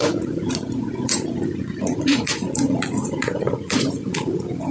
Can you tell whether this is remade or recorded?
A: remade